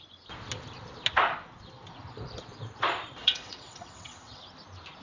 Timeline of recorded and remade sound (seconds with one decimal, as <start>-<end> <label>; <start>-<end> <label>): 0.0-3.2 recorded; 3.2-4.4 remade; 4.4-5.0 recorded